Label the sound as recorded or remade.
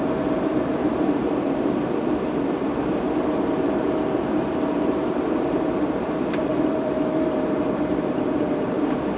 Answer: remade